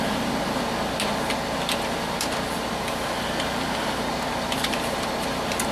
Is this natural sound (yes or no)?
yes